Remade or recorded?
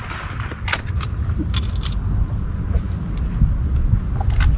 recorded